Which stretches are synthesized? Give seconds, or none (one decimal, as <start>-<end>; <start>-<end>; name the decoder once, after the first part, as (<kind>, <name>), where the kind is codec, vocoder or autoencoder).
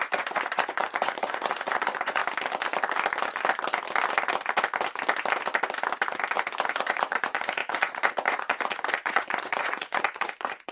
0.0-2.2 (vocoder, Vocos); 6.7-10.7